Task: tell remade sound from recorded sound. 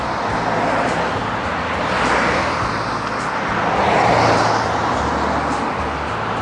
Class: recorded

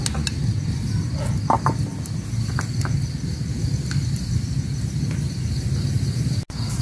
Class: recorded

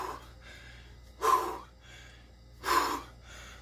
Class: recorded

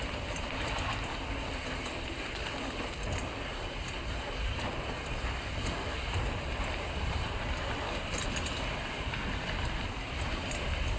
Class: recorded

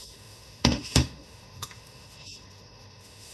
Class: remade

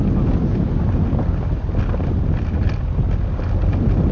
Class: recorded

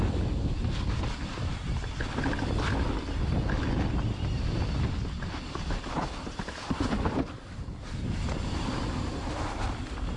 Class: recorded